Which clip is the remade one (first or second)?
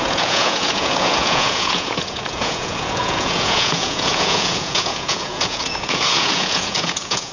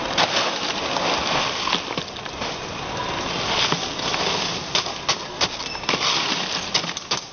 first